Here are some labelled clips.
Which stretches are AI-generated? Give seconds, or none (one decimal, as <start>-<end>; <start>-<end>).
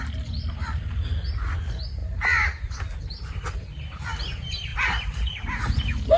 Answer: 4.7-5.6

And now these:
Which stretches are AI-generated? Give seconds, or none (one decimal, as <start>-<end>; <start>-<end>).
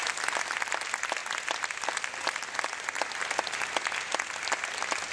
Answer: none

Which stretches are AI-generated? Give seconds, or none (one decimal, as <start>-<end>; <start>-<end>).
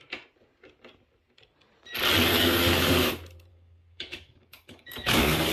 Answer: 2.3-3.1; 3.5-5.5